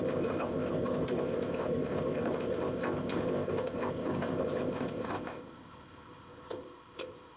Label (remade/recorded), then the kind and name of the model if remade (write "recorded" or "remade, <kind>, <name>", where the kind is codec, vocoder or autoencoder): remade, codec, ZipCodec